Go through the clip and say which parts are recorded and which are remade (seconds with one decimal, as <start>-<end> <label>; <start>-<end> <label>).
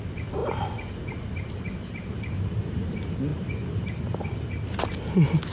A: 0.0-5.5 recorded